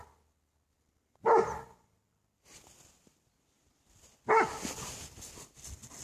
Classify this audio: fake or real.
real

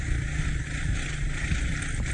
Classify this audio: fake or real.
real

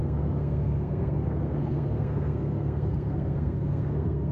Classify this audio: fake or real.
fake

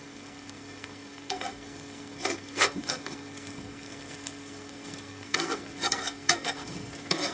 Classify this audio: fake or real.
fake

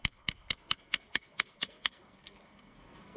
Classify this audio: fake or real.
fake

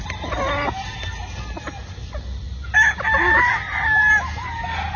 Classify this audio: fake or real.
real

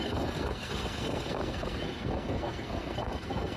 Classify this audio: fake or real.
fake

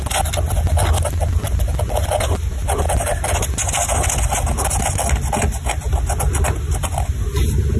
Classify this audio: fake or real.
real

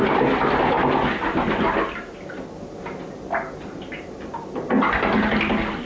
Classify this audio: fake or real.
real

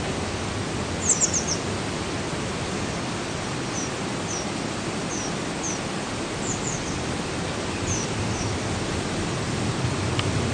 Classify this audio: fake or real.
real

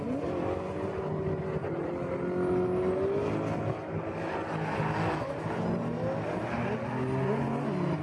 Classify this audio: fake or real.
real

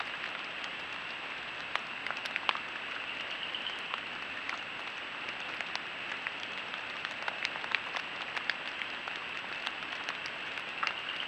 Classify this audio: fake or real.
real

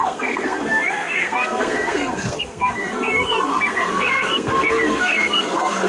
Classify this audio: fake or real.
fake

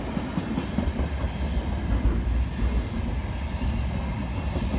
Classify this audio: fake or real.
real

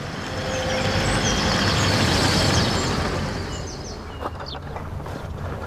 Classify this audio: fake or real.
real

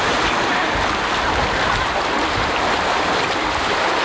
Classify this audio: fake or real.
real